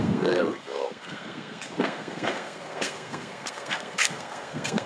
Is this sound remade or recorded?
remade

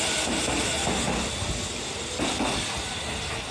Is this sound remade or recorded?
recorded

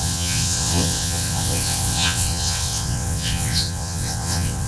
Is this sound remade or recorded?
remade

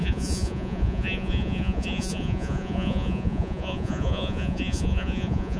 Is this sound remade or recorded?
remade